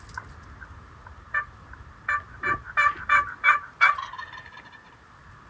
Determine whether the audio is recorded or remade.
recorded